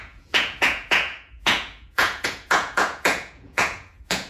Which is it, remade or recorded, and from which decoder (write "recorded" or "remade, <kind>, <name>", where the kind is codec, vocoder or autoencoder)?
remade, vocoder, Vocos